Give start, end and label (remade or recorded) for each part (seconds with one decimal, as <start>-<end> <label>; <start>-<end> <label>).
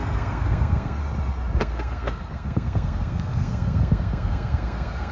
0.0-1.0 remade; 1.0-1.6 recorded; 1.6-5.1 remade